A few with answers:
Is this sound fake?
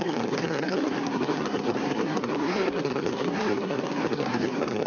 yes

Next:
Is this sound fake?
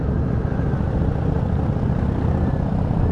no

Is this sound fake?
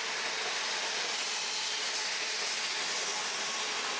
no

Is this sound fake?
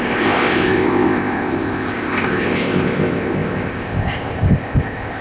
yes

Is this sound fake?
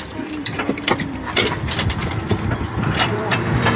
yes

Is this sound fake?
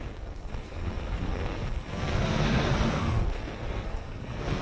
yes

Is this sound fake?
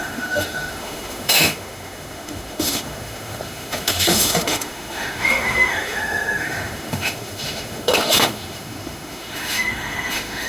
yes